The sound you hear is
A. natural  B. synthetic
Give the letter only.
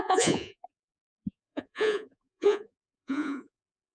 B